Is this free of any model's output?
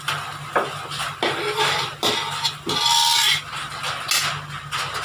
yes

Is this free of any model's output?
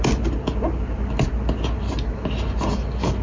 yes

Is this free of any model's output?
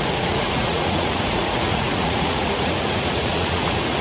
no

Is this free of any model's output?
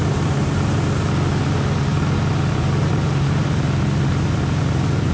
yes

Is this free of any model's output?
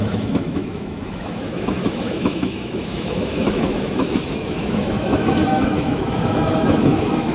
no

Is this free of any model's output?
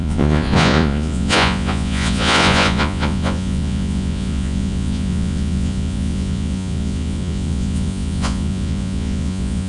no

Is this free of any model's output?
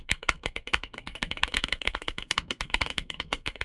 no